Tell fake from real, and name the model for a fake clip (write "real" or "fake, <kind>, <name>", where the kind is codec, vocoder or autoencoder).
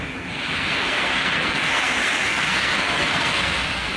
fake, codec, SNAC